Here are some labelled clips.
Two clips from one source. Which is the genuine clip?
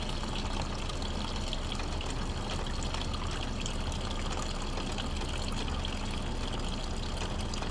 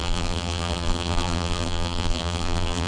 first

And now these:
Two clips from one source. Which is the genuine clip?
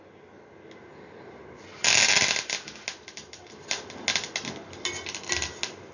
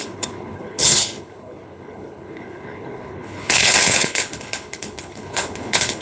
first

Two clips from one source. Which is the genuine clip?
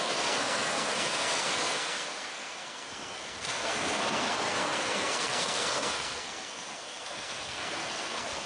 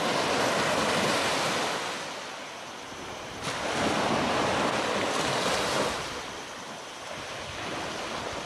second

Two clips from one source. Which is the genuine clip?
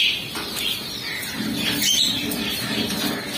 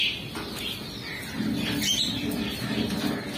second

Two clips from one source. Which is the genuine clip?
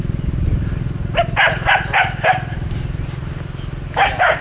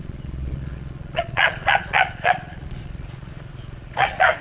first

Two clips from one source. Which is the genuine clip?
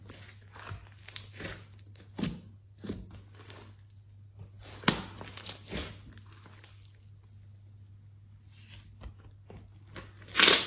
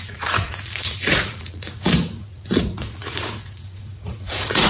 first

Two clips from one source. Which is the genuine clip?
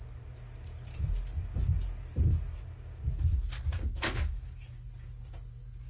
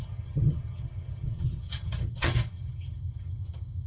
first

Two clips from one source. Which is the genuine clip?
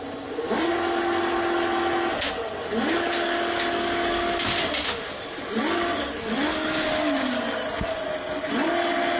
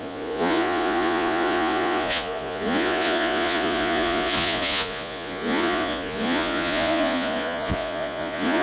first